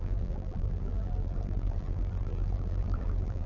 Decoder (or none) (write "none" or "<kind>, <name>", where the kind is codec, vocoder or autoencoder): vocoder, BigVGAN v2